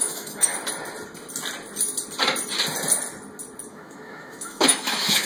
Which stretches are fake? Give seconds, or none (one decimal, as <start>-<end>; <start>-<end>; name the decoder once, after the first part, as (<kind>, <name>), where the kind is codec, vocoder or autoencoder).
0.0-0.5 (autoencoder, DAC-VAE); 3.7-5.3